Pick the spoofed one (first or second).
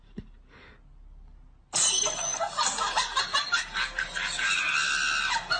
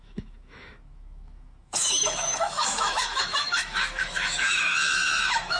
second